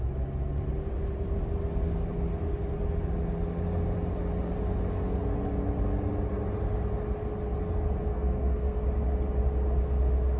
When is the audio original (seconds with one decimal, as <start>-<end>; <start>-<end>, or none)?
0.0-8.1; 8.8-10.4